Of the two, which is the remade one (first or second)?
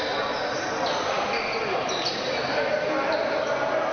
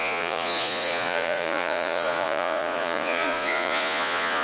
second